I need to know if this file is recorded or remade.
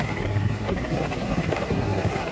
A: remade